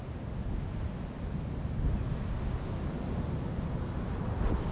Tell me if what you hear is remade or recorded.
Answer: recorded